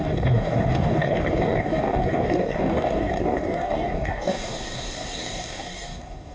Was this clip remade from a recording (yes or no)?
yes